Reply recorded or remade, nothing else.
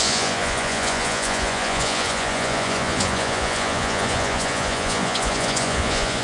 remade